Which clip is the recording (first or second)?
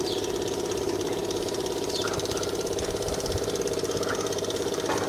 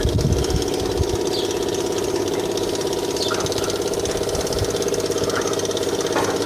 second